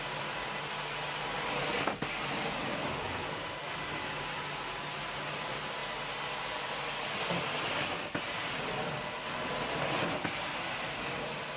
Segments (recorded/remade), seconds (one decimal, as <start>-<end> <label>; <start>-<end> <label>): 0.0-11.6 recorded

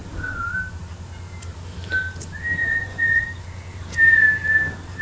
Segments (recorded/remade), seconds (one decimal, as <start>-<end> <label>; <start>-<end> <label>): 0.0-2.6 recorded; 2.6-3.2 remade; 3.2-5.0 recorded

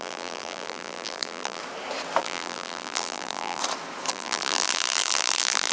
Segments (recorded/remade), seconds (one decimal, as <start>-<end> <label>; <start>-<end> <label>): 0.0-1.6 remade; 1.6-2.2 recorded; 2.2-3.6 remade; 3.6-4.1 recorded; 4.1-5.7 remade

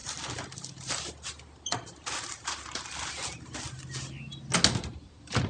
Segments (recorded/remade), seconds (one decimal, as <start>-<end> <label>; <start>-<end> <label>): 0.0-5.5 recorded

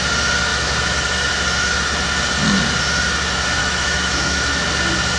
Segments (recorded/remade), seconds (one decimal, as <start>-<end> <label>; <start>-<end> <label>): 0.0-0.5 recorded; 0.5-1.3 remade; 1.3-3.6 recorded; 3.6-4.7 remade; 4.7-5.2 recorded

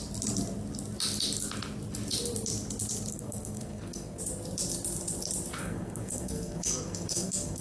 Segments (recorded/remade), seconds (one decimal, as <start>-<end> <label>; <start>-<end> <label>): 0.0-3.1 recorded; 3.1-4.2 remade; 4.2-5.6 recorded; 5.6-7.6 remade

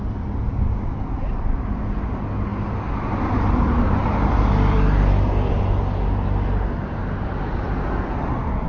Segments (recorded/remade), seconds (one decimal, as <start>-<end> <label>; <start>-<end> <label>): 0.0-8.7 recorded

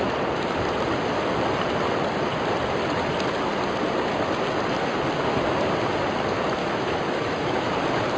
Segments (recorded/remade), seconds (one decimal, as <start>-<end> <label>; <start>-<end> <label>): 0.0-6.6 recorded; 6.6-7.7 remade; 7.7-8.2 recorded